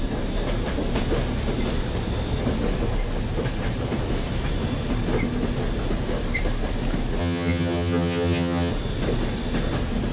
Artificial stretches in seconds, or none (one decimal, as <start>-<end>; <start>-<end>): 7.2-8.7